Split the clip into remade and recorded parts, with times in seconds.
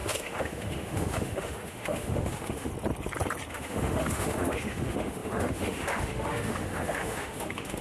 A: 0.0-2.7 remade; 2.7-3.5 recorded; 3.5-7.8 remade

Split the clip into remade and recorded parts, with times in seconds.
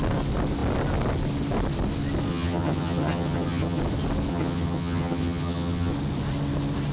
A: 0.0-2.3 recorded; 2.3-3.8 remade; 3.8-4.3 recorded; 4.3-5.9 remade; 5.9-6.9 recorded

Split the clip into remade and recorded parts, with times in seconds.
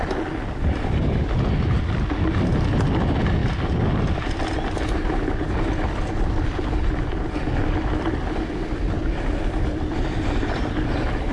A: 0.0-11.3 recorded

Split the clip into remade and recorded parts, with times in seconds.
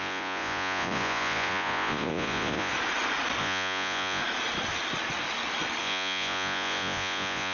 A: 0.0-2.7 remade; 2.7-3.4 recorded; 3.4-4.2 remade; 4.2-5.8 recorded; 5.8-7.5 remade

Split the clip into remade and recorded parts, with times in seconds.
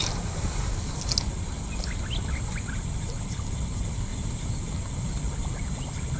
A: 0.0-4.1 recorded; 4.1-4.7 remade; 4.7-6.2 recorded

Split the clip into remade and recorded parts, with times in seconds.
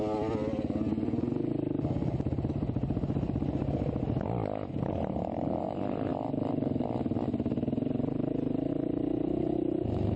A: 0.0-10.2 recorded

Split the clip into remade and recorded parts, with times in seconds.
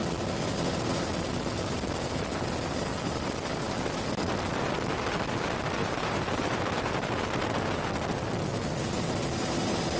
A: 0.0-5.8 recorded; 5.8-6.6 remade; 6.6-10.0 recorded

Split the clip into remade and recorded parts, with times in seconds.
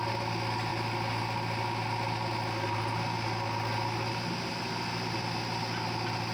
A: 0.0-6.3 recorded